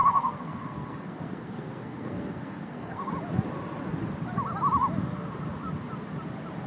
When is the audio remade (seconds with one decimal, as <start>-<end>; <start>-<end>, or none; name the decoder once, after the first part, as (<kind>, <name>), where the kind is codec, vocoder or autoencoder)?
0.0-3.1 (codec, SNAC)